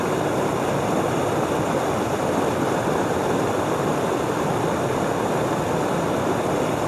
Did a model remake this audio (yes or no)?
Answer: yes